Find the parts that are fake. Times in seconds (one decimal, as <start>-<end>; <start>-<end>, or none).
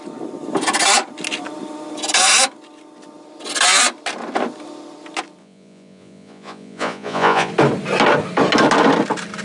5.4-7.5